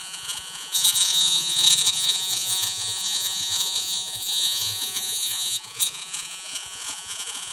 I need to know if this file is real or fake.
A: fake